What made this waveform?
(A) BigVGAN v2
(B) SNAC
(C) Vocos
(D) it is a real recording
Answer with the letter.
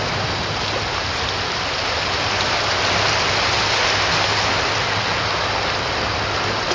D